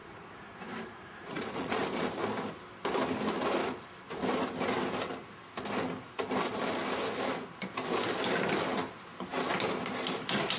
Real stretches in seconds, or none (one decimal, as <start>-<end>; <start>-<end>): 0.5-1.0; 1.8-10.6